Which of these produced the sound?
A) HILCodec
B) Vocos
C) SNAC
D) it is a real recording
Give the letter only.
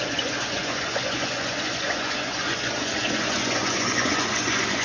B